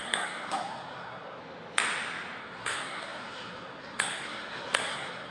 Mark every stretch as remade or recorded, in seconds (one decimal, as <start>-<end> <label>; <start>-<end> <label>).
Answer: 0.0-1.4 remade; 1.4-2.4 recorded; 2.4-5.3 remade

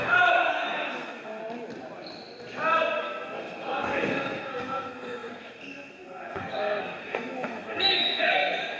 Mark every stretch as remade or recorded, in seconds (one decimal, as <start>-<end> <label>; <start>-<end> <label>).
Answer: 0.0-1.4 remade; 1.4-3.0 recorded; 3.0-8.8 remade

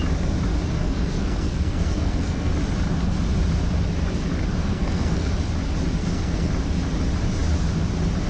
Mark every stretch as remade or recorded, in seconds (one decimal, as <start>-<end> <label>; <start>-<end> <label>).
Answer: 0.0-0.8 recorded; 0.8-2.5 remade; 2.5-4.6 recorded; 4.6-5.3 remade; 5.3-6.0 recorded; 6.0-6.5 remade; 6.5-8.3 recorded

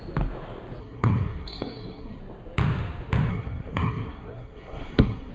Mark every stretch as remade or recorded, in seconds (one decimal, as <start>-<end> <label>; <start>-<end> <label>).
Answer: 0.0-0.8 recorded; 0.8-2.2 remade; 2.2-3.3 recorded; 3.3-5.3 remade

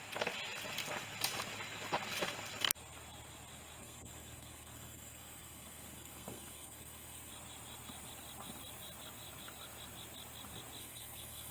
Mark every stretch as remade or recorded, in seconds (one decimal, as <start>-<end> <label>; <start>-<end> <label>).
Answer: 0.0-3.8 recorded; 3.8-7.3 remade; 7.3-10.8 recorded; 10.8-11.5 remade

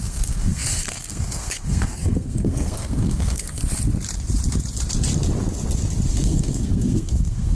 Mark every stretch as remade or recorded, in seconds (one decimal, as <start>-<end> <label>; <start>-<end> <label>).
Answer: 0.0-3.6 remade; 3.6-6.1 recorded; 6.1-7.5 remade

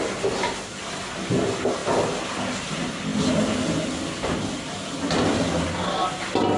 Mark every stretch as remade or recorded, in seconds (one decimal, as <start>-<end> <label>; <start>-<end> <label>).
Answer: 0.0-6.6 recorded

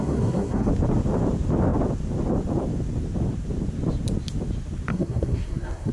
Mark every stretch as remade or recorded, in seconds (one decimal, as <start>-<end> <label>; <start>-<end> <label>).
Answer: 0.0-0.7 remade; 0.7-4.9 recorded; 4.9-5.9 remade